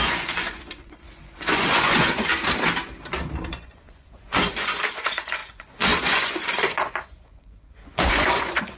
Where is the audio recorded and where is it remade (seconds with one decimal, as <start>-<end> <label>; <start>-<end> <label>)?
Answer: 0.0-2.3 remade; 2.3-3.5 recorded; 3.5-8.8 remade

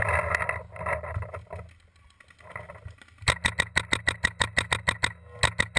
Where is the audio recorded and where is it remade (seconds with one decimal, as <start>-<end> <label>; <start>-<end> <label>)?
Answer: 0.0-5.8 recorded

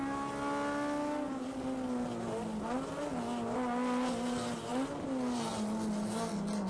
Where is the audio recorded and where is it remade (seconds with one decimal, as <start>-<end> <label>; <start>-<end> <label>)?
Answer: 0.0-6.7 recorded

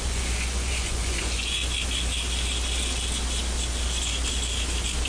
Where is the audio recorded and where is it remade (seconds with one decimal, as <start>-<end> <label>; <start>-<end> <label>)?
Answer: 0.0-1.6 remade; 1.6-5.1 recorded